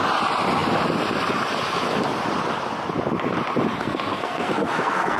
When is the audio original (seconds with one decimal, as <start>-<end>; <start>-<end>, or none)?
0.0-3.8